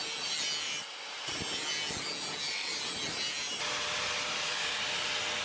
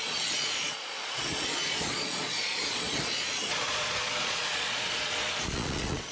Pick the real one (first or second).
first